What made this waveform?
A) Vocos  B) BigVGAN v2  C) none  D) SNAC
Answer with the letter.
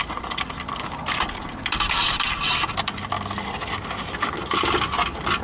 B